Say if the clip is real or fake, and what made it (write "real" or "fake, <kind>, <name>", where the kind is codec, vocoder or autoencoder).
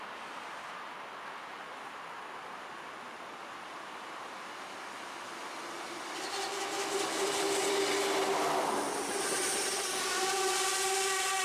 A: real